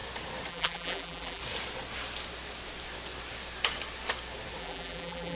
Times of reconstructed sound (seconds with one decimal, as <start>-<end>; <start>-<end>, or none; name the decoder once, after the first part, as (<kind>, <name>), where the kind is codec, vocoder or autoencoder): 0.5-1.4 (vocoder, BigVGAN v2); 4.6-5.4